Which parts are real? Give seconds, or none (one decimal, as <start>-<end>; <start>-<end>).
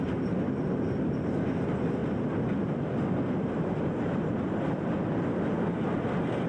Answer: 0.0-6.5